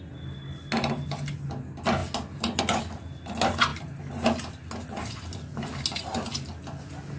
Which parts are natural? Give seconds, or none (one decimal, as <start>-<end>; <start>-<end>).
0.0-7.2